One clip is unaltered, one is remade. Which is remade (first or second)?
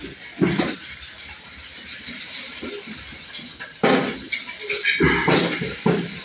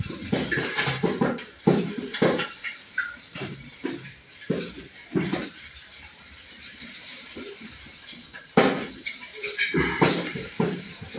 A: second